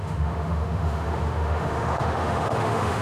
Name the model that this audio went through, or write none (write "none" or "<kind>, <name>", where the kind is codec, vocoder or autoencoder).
autoencoder, DAC-VAE